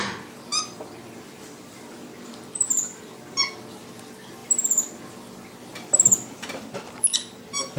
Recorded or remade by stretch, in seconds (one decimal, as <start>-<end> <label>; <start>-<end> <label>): 0.0-0.5 recorded; 0.5-3.5 remade; 3.5-4.4 recorded; 4.4-5.0 remade; 5.0-5.7 recorded; 5.7-7.8 remade